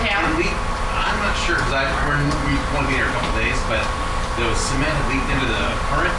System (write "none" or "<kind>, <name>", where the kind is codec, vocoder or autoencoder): none